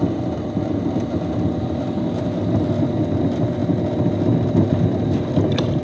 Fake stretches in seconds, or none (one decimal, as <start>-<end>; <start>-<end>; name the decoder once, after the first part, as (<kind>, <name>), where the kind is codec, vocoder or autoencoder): none